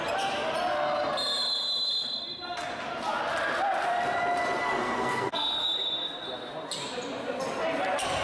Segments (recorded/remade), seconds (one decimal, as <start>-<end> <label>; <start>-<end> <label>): 0.0-4.6 recorded; 4.6-5.6 remade; 5.6-8.2 recorded